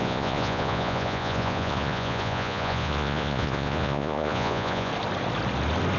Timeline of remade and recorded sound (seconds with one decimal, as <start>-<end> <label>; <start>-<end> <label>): 0.0-4.9 remade; 4.9-6.0 recorded